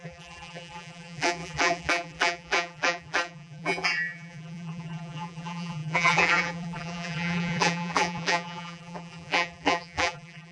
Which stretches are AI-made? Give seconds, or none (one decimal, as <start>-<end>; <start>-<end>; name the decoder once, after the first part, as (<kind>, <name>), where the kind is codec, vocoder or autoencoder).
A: 0.0-10.5 (vocoder, BigVGAN v2)